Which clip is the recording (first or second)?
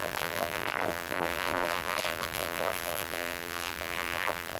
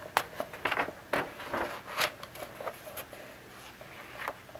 second